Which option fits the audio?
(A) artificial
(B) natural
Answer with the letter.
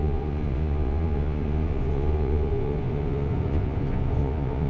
A